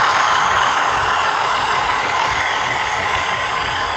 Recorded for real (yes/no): no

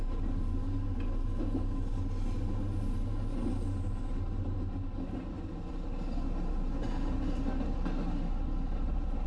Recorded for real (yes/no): yes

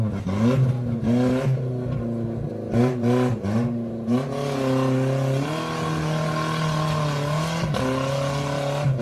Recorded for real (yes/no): yes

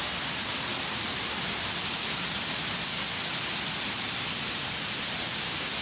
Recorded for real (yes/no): yes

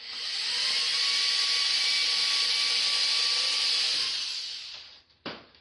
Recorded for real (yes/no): yes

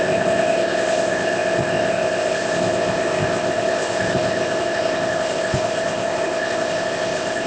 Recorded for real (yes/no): no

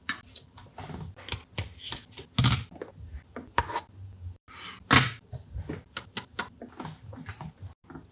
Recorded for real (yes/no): yes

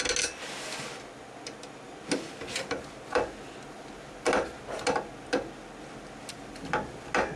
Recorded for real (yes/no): yes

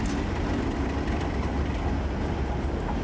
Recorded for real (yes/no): yes